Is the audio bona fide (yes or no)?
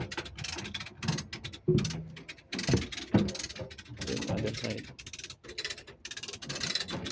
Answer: yes